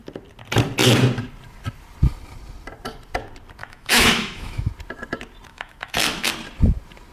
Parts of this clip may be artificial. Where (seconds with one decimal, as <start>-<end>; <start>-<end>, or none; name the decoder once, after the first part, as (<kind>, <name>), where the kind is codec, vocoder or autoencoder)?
3.6-4.7 (autoencoder, DAC-VAE); 5.5-6.3